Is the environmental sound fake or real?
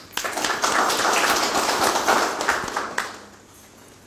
real